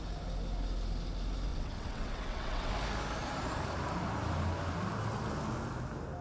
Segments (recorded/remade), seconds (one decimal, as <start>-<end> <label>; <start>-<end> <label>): 0.0-1.5 recorded; 1.5-2.7 remade; 2.7-6.2 recorded